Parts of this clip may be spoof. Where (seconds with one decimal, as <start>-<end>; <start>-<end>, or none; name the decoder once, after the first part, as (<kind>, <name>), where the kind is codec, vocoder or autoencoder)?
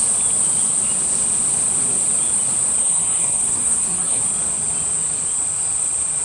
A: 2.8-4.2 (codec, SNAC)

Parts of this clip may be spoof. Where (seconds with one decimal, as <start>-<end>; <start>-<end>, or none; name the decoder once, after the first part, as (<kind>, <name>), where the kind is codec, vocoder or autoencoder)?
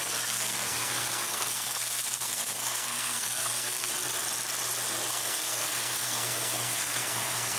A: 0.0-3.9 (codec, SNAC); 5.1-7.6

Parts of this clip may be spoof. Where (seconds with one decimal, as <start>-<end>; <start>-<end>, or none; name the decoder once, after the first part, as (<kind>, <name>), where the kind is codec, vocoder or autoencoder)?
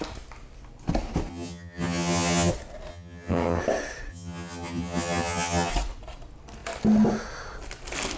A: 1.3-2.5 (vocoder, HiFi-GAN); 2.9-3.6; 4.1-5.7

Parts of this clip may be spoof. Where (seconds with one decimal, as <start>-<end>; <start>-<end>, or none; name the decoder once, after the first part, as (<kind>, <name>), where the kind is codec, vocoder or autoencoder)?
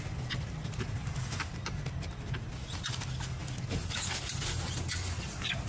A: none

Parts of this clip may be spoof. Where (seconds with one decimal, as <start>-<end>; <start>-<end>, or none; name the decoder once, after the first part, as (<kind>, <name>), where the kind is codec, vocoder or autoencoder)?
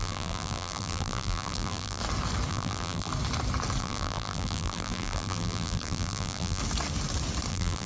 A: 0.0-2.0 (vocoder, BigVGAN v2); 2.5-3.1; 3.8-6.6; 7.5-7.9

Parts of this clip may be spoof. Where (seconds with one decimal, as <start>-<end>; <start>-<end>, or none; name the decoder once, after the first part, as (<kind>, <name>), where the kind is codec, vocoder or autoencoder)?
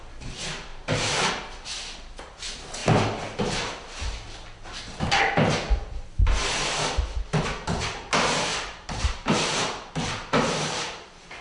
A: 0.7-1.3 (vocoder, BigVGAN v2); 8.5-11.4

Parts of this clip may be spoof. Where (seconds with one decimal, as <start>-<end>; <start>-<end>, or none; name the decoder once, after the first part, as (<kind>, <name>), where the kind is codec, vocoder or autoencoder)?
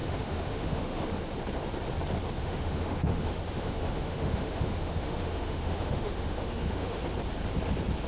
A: 0.0-1.1 (autoencoder, DAC-VAE); 2.4-7.0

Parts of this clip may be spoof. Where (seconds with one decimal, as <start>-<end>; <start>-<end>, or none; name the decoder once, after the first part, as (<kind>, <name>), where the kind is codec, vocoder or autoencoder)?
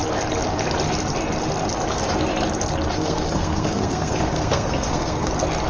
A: 2.9-5.3 (codec, SNAC)